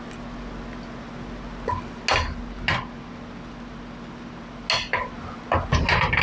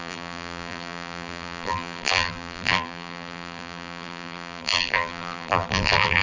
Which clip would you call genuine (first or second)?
first